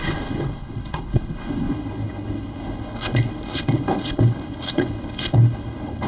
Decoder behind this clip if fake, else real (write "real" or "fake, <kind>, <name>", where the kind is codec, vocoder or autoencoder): fake, codec, HILCodec